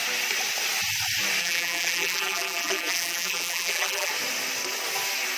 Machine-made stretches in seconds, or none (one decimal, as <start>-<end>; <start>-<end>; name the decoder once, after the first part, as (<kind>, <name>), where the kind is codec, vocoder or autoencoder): 1.4-4.1 (vocoder, BigVGAN v2)

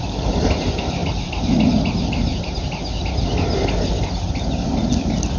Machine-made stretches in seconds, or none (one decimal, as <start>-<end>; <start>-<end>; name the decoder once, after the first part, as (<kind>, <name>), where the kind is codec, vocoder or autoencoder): none